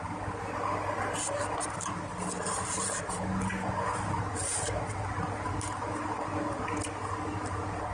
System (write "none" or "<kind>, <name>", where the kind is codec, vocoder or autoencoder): none